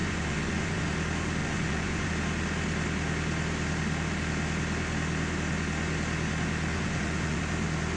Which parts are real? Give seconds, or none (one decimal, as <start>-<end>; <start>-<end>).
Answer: 0.9-1.4; 2.1-6.7; 7.4-8.0